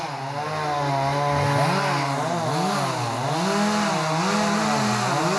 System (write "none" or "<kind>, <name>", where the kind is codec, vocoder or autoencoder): none